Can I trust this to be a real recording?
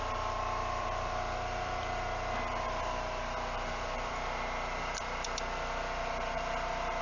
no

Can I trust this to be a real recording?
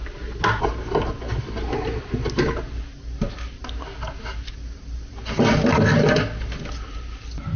yes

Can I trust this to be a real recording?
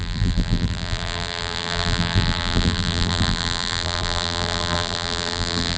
no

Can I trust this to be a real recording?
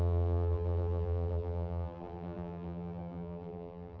no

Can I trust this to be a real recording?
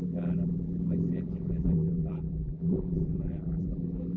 no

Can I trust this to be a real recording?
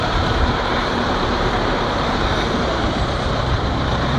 no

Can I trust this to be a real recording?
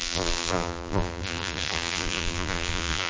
no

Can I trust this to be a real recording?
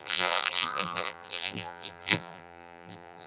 no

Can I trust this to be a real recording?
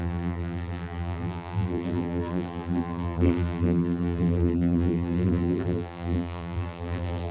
no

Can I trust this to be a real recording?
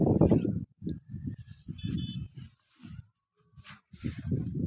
no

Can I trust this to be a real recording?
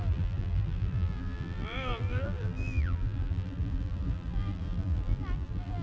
no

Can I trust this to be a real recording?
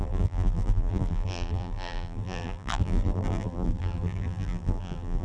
no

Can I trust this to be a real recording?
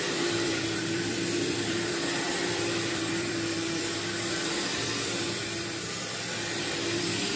no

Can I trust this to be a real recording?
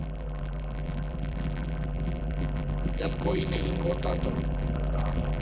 no